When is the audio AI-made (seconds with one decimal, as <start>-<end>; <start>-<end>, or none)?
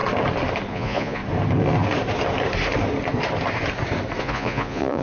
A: 0.7-1.2; 4.2-5.0